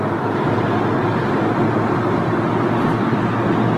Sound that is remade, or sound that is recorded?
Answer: recorded